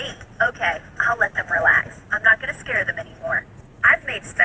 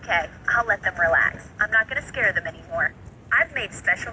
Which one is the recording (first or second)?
second